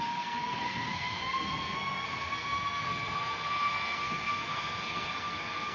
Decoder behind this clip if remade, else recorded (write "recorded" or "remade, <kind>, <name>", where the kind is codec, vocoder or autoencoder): remade, codec, SNAC